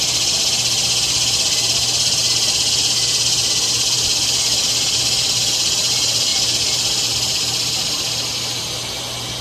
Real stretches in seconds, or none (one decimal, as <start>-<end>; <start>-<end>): 0.0-9.4